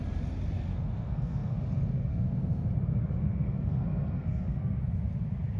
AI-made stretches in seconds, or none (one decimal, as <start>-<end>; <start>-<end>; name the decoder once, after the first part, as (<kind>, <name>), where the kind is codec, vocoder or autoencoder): 0.7-1.6 (codec, SNAC); 2.1-2.7; 3.2-4.8